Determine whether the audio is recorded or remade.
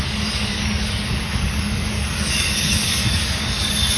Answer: remade